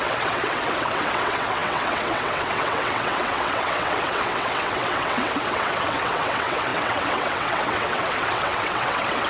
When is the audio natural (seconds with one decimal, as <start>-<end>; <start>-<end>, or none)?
none